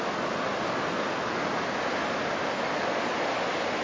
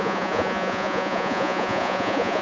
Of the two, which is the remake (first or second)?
second